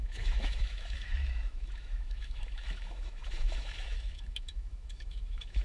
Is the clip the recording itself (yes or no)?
no